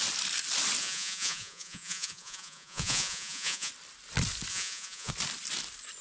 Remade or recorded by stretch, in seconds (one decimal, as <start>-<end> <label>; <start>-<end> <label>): 0.0-0.8 recorded; 0.8-3.7 remade; 3.7-4.5 recorded; 4.5-5.1 remade; 5.1-6.0 recorded